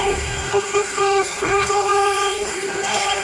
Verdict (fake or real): fake